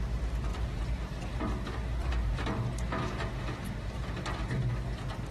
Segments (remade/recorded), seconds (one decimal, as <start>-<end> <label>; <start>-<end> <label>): 0.0-0.5 recorded; 0.5-1.4 remade; 1.4-2.0 recorded; 2.0-2.7 remade; 2.7-5.3 recorded